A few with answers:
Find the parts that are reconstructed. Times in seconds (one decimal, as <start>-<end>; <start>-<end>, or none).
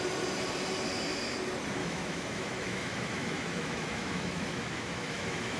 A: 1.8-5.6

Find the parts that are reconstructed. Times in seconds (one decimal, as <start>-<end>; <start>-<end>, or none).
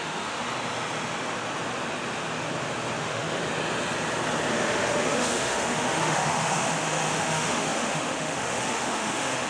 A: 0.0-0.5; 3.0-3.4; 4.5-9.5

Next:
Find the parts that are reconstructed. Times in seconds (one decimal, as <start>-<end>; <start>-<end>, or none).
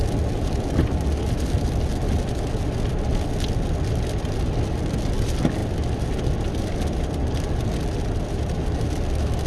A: none